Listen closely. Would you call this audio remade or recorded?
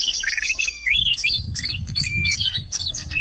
remade